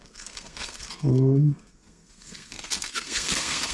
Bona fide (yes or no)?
no